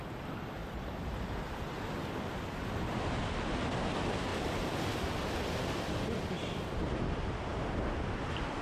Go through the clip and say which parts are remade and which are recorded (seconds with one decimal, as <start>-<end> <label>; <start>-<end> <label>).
0.0-0.6 recorded; 0.6-1.3 remade; 1.3-4.3 recorded; 4.3-5.3 remade; 5.3-7.5 recorded; 7.5-8.6 remade